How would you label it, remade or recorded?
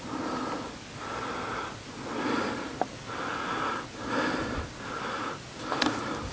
recorded